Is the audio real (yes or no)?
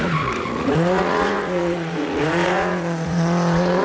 no